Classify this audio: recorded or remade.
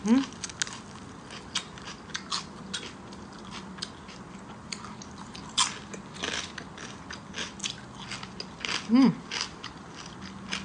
recorded